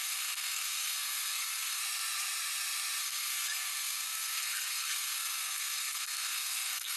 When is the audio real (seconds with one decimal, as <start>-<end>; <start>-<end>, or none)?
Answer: 1.8-3.0